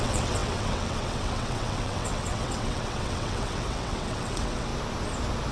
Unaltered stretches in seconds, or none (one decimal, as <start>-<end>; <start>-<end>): 4.7-5.5